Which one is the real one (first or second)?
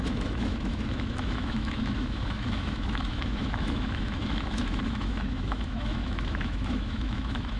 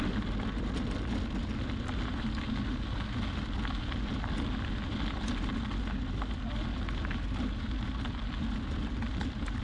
second